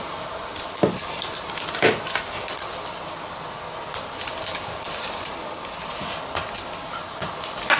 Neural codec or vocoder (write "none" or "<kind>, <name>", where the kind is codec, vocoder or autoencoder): none